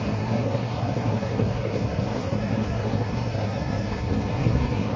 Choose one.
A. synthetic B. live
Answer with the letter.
A